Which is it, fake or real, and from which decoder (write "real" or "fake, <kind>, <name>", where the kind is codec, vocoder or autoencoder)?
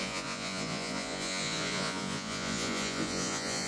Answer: fake, vocoder, Vocos